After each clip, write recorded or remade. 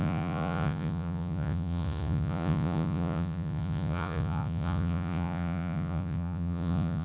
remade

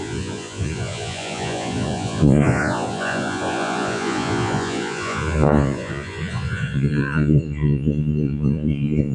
remade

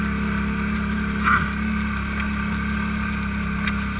recorded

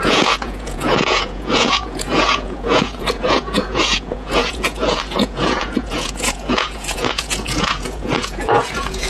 remade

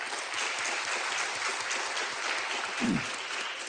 recorded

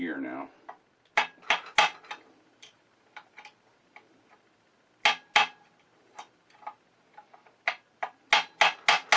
recorded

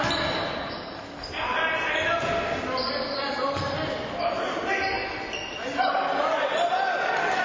recorded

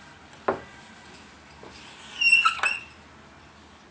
recorded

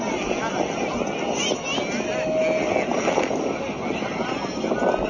recorded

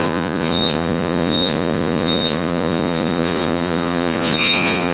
remade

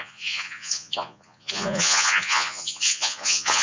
remade